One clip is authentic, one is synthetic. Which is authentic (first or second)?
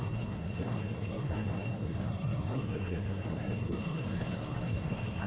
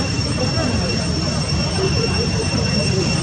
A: second